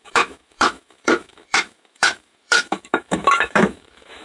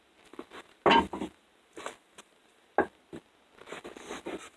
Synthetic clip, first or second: first